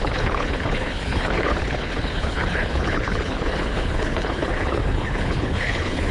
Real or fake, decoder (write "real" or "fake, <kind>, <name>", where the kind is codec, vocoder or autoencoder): fake, codec, HILCodec